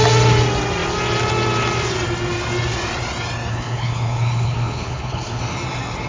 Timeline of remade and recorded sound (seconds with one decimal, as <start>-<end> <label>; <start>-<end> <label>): 0.0-3.5 recorded; 3.5-5.4 remade; 5.4-6.1 recorded